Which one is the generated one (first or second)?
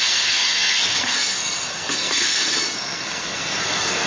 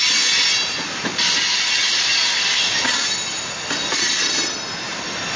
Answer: first